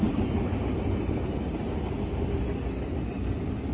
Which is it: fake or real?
real